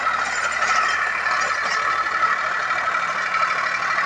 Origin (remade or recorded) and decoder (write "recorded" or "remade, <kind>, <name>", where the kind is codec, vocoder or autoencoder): recorded